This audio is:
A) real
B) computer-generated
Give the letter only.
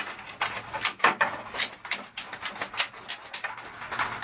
A